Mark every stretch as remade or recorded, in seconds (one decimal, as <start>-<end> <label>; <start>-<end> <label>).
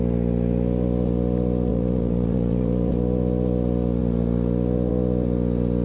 0.0-1.7 recorded; 1.7-2.9 remade; 2.9-5.8 recorded